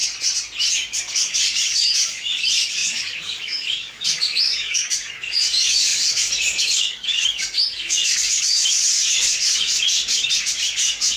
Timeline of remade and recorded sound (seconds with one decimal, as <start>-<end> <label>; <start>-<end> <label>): 0.0-0.7 recorded; 0.7-11.2 remade